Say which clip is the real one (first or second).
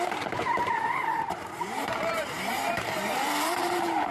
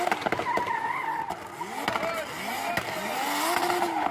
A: second